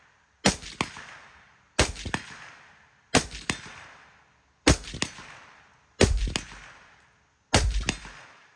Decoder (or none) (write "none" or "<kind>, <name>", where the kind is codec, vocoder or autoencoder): none